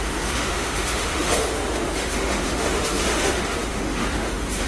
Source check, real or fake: fake